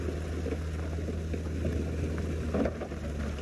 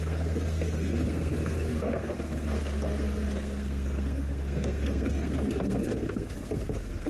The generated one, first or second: second